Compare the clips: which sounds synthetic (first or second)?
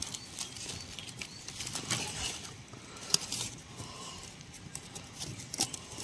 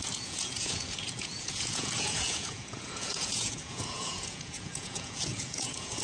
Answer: second